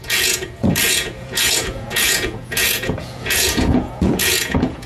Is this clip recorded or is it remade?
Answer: remade